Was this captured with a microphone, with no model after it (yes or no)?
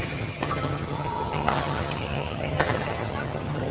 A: no